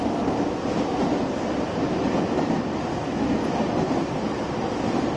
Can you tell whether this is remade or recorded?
recorded